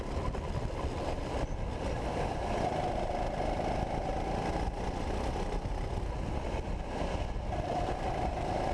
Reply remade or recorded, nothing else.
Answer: recorded